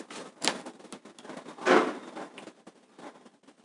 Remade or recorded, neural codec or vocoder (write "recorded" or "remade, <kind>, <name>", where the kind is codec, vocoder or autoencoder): recorded